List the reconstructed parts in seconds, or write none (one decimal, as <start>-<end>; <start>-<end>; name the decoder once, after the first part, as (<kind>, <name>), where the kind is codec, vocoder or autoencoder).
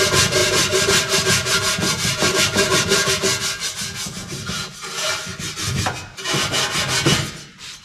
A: 0.4-3.1 (vocoder, BigVGAN v2); 4.2-4.8